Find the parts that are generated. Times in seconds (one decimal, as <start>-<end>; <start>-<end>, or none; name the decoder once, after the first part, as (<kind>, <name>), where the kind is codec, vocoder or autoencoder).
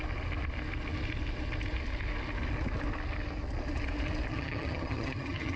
4.3-5.6 (vocoder, HiFi-GAN)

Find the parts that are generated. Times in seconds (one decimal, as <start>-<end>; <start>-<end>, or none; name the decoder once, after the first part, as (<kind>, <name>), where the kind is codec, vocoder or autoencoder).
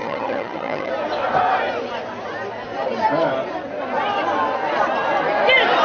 0.0-0.9 (vocoder, HiFi-GAN)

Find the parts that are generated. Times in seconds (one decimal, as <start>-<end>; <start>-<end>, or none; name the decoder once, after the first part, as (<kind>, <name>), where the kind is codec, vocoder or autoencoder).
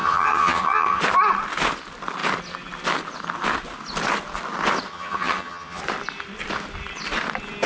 0.0-1.0 (vocoder, HiFi-GAN); 4.9-5.8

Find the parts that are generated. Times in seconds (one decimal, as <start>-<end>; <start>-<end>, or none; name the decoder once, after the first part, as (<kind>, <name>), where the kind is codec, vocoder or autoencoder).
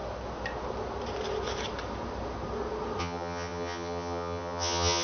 3.0-5.0 (vocoder, HiFi-GAN)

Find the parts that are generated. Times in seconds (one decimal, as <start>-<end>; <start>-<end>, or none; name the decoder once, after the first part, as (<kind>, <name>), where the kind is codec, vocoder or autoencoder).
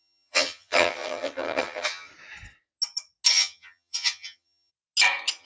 0.0-2.1 (vocoder, HiFi-GAN); 3.3-4.7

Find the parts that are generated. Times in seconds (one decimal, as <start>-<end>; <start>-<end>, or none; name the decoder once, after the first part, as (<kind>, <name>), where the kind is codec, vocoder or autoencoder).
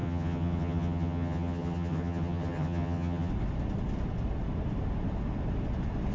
0.0-3.3 (vocoder, HiFi-GAN)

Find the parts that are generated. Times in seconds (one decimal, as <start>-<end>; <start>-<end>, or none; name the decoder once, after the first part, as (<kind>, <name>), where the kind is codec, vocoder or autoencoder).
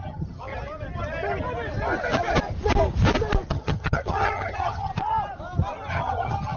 0.0-0.5 (vocoder, HiFi-GAN); 3.5-4.9; 5.9-6.6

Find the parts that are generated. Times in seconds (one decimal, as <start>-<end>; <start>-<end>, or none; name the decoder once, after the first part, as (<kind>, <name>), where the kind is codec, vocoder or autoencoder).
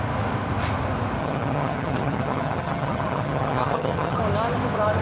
1.2-4.2 (vocoder, HiFi-GAN)